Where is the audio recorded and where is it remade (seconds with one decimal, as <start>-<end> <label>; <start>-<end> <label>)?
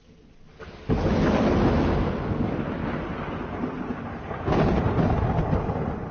0.0-6.1 recorded